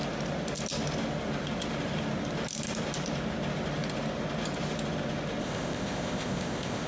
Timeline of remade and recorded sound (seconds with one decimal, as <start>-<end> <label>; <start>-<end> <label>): 0.0-5.4 recorded; 5.4-6.9 remade